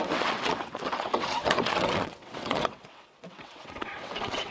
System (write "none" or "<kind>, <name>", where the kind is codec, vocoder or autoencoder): vocoder, WaveNeXt